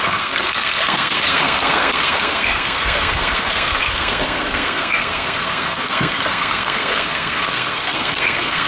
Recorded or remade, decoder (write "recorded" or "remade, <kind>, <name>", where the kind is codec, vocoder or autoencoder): remade, codec, SNAC